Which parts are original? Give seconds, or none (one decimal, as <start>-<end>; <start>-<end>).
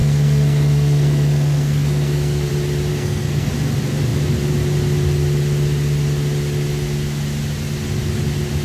2.5-2.9; 3.5-8.6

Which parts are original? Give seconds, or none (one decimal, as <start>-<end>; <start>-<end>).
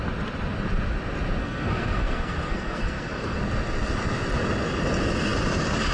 0.0-1.4; 3.4-5.9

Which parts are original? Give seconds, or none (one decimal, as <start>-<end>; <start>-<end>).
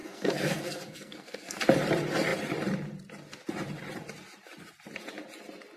1.6-5.8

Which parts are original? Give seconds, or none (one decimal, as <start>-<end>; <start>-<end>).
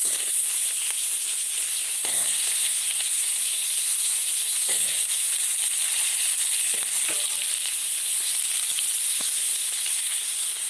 5.3-7.7; 8.3-9.0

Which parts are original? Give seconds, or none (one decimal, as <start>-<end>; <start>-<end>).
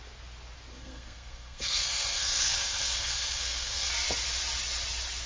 0.0-0.7; 3.9-5.3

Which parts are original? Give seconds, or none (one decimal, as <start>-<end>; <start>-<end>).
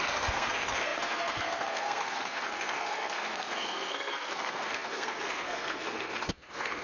none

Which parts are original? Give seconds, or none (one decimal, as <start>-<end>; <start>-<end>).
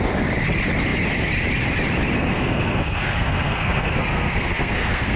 0.0-2.3